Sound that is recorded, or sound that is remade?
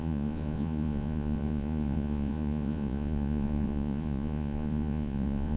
remade